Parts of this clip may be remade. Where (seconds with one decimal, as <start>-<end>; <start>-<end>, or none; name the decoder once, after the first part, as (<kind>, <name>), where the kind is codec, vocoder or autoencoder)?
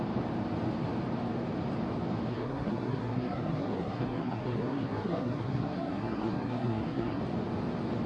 2.3-7.2 (codec, SNAC)